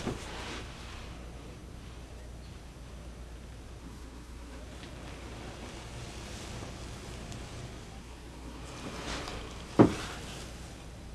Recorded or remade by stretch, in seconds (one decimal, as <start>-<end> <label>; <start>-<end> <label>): 0.0-3.8 recorded; 3.8-4.6 remade; 4.6-8.0 recorded; 8.0-8.6 remade; 8.6-11.1 recorded